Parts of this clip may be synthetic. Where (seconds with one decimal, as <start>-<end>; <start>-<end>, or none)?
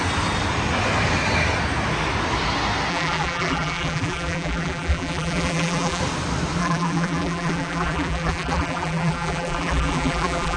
2.9-6.0; 6.6-10.6